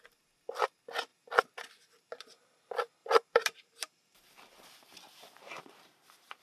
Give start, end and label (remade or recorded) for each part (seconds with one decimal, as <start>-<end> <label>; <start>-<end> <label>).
0.0-3.0 recorded; 3.0-6.4 remade